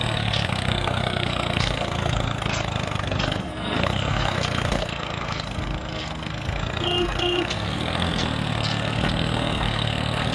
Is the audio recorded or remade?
remade